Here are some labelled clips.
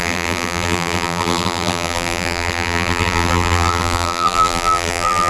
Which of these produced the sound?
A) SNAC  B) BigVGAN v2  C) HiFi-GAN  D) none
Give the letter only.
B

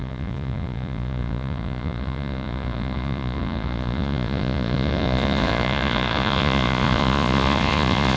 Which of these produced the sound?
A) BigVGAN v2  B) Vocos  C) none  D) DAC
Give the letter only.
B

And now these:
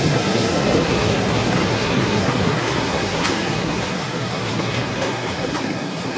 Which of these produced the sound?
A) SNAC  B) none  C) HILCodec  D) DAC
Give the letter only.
A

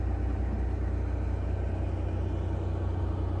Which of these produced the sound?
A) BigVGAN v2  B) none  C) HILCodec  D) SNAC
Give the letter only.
B